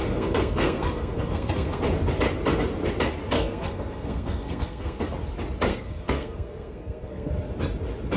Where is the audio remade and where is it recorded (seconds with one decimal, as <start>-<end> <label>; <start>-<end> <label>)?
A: 0.0-1.8 remade; 1.8-3.2 recorded; 3.2-5.0 remade; 5.0-5.7 recorded; 5.7-7.3 remade; 7.3-8.2 recorded

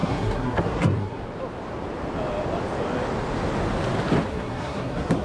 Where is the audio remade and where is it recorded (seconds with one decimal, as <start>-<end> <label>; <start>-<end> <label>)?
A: 0.0-1.2 remade; 1.2-4.3 recorded; 4.3-5.2 remade

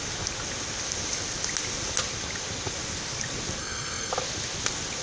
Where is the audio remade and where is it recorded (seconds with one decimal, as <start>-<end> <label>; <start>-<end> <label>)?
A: 0.0-3.6 recorded; 3.6-4.1 remade; 4.1-5.0 recorded

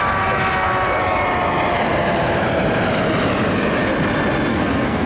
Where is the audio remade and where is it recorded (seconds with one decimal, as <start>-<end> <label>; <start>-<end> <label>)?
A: 0.0-4.5 recorded; 4.5-5.1 remade

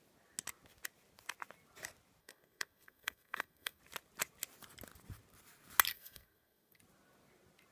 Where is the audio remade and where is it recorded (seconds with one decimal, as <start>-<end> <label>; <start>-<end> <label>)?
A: 0.0-2.2 recorded; 2.2-3.8 remade; 3.8-5.9 recorded; 5.9-6.8 remade; 6.8-7.7 recorded